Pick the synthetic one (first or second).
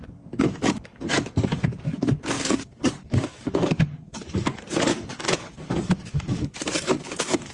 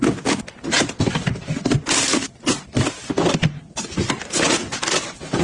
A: first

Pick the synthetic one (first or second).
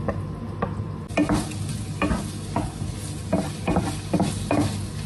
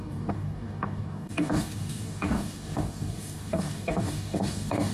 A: second